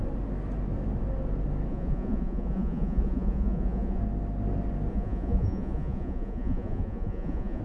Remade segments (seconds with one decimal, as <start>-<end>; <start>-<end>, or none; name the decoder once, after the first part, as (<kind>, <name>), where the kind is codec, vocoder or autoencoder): 1.7-4.0 (vocoder, Vocos); 4.9-7.6